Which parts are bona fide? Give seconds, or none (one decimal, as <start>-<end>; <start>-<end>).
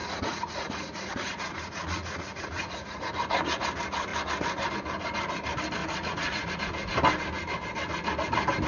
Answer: 3.1-5.8; 6.5-8.7